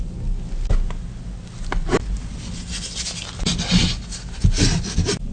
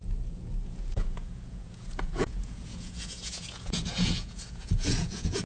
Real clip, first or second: first